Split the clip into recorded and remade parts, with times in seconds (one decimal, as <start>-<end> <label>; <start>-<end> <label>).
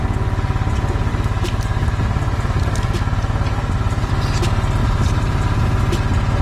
0.0-1.1 recorded; 1.1-4.1 remade; 4.1-4.8 recorded; 4.8-5.8 remade; 5.8-6.4 recorded